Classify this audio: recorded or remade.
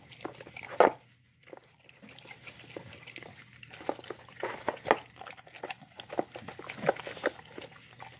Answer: recorded